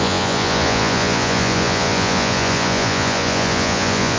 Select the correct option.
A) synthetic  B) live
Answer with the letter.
A